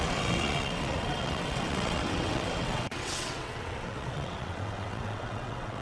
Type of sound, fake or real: fake